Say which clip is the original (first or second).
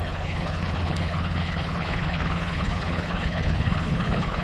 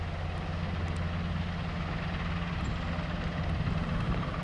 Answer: second